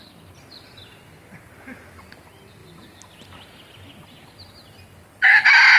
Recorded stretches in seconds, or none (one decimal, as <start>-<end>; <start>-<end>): 0.0-5.8